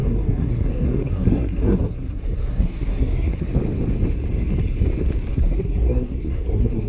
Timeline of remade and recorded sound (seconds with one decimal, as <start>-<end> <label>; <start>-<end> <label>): 0.0-3.5 remade; 3.5-5.3 recorded; 5.3-6.9 remade